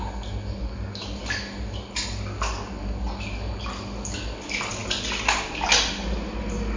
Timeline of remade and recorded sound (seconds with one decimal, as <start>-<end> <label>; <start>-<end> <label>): 0.0-6.8 recorded